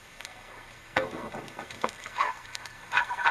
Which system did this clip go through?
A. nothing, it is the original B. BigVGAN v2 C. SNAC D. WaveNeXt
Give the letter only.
C